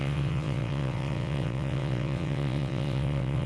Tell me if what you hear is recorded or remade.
remade